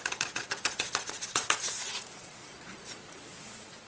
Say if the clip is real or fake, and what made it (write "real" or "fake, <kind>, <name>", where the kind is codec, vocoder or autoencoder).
fake, vocoder, Vocos